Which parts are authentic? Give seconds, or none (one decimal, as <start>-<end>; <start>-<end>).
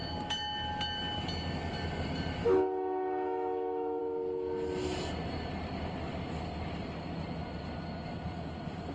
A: 0.0-2.4; 4.0-8.9